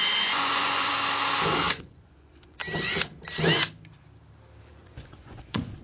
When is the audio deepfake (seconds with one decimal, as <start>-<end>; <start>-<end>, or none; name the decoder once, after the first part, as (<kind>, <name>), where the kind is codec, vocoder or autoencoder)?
0.0-0.9 (vocoder, Vocos); 1.7-2.6; 4.7-5.8